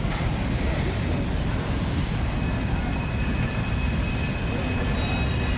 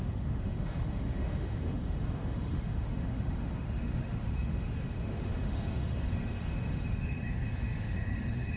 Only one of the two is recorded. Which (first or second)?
first